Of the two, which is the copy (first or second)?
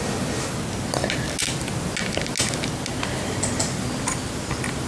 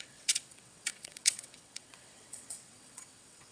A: second